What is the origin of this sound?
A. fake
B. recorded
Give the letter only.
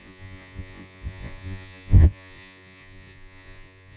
A